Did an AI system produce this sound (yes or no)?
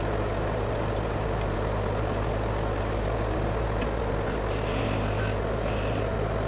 no